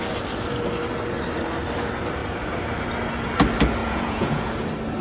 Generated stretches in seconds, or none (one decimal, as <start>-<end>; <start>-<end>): 3.8-4.5